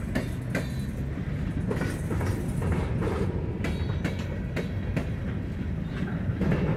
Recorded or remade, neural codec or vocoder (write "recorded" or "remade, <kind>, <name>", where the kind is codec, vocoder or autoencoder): recorded